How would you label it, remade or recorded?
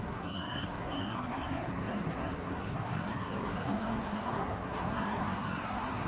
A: remade